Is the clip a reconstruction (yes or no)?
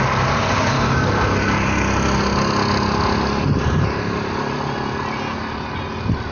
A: no